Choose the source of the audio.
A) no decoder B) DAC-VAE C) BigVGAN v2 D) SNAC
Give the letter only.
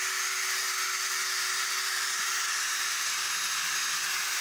A